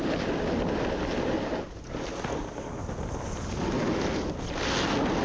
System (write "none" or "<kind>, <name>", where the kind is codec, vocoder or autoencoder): none